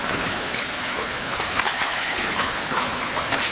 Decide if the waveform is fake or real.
fake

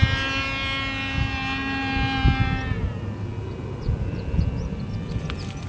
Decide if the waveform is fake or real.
real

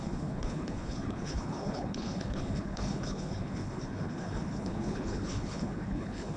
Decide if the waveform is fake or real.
fake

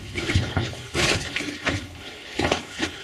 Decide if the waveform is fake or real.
fake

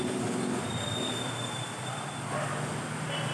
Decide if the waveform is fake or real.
real